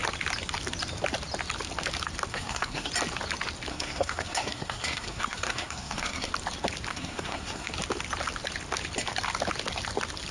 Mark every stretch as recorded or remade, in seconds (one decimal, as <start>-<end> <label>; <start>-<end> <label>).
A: 0.0-2.3 recorded; 2.3-2.9 remade; 2.9-3.7 recorded; 3.7-6.3 remade; 6.3-6.9 recorded; 6.9-7.7 remade; 7.7-10.3 recorded